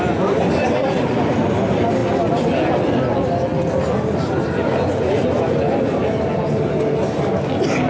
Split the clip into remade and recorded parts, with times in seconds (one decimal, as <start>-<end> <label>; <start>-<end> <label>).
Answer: 0.0-7.9 recorded